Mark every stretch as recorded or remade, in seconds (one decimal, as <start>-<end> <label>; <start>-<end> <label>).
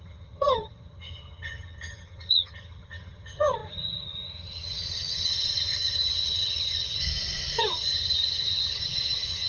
0.0-7.0 remade; 7.0-7.6 recorded; 7.6-9.5 remade